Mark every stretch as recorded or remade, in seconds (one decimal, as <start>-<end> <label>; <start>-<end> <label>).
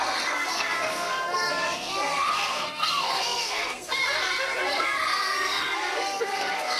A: 0.0-6.8 remade